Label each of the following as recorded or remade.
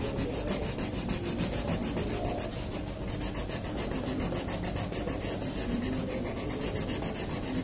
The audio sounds recorded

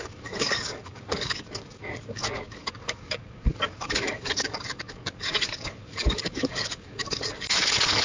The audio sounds remade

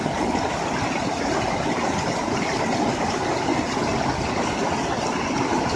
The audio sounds recorded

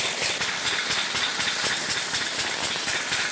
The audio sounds recorded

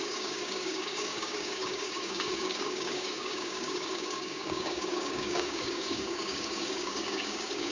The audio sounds remade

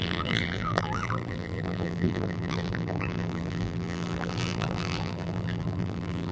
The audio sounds remade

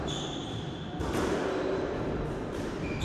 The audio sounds remade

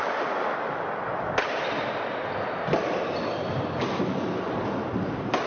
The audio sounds recorded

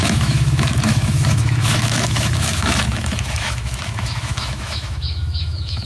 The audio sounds remade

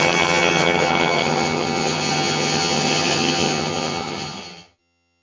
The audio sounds remade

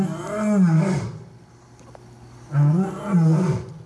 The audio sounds recorded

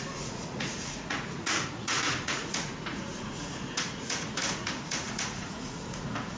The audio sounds remade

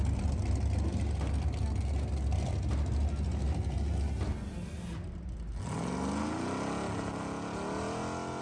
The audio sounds recorded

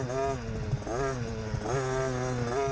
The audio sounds recorded